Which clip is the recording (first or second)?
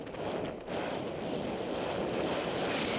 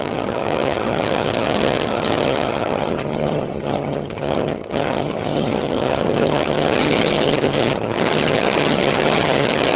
first